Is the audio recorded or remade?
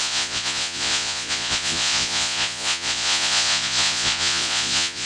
remade